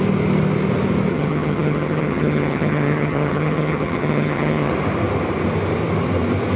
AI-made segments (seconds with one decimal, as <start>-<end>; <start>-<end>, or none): 1.1-4.7